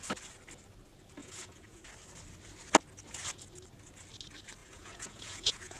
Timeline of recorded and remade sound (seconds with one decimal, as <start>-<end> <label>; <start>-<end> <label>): 0.0-1.2 recorded; 1.2-1.8 remade; 1.8-4.6 recorded; 4.6-5.8 remade